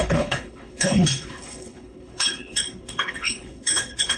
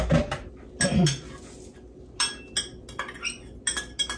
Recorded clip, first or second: second